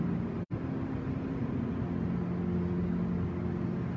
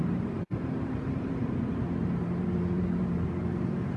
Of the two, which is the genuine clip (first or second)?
first